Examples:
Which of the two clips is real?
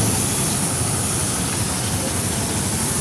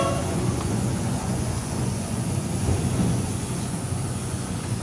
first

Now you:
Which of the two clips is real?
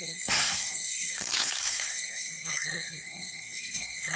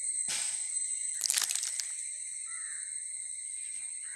second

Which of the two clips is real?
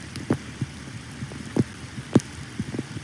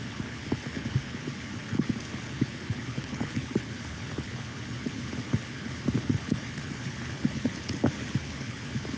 first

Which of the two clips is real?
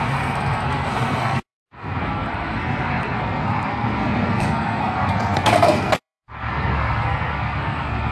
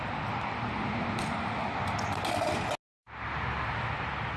second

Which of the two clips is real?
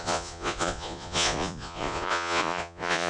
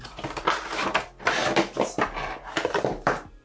second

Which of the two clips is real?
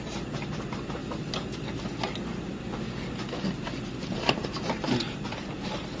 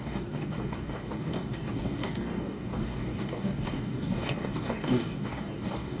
first